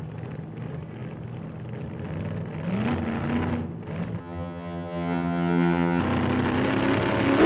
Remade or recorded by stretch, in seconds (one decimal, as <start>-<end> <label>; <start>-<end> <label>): 0.0-4.2 recorded; 4.2-6.0 remade; 6.0-7.5 recorded